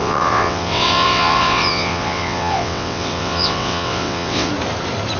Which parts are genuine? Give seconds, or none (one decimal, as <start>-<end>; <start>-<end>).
4.5-5.2